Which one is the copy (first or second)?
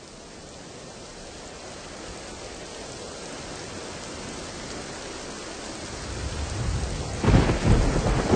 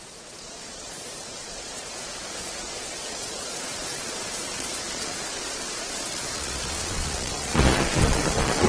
second